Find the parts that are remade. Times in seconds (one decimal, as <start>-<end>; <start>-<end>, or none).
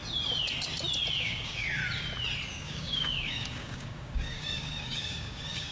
1.2-1.8; 2.5-5.7